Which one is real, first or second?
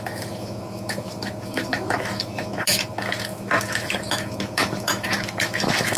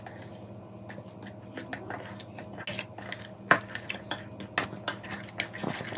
second